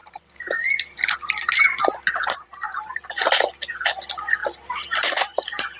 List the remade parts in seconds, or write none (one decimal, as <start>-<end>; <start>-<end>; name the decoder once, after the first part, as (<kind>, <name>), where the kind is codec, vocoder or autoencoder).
0.0-3.2 (vocoder, BigVGAN v2); 4.4-5.8